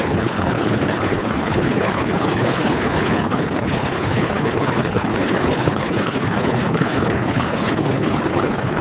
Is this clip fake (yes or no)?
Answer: yes